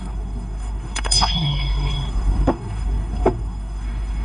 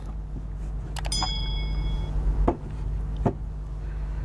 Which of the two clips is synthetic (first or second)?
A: first